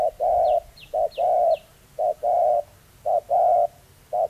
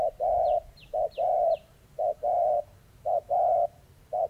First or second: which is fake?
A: second